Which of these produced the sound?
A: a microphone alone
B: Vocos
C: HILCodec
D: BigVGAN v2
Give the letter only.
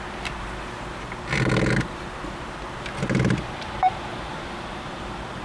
D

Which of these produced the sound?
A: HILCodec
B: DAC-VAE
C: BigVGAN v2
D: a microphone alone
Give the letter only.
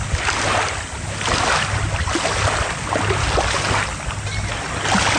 D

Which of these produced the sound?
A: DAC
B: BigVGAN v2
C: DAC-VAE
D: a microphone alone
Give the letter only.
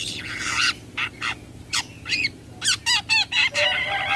D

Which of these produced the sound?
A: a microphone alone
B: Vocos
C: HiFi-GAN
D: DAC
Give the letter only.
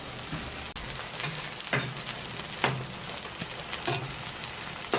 A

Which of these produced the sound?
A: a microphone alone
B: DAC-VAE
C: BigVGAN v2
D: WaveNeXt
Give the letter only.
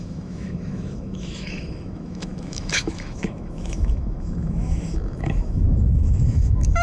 B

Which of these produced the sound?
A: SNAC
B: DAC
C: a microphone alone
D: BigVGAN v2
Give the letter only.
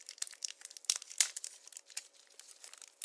C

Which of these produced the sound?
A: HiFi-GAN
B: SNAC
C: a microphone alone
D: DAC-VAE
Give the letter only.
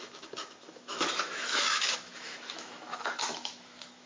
D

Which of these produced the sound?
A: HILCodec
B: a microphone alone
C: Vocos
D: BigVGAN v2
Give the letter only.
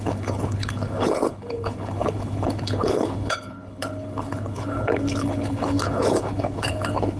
A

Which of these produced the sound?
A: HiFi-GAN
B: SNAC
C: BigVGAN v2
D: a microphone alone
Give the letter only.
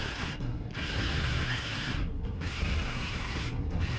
B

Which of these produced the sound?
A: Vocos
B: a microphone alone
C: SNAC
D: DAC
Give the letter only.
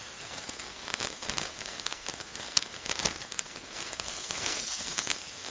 C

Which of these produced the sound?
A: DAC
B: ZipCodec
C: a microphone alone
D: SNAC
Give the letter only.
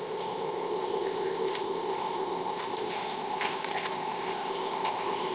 B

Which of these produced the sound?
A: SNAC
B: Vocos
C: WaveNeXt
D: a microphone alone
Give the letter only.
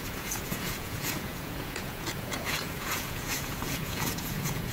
B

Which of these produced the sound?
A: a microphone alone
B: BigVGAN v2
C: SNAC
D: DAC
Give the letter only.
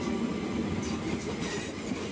A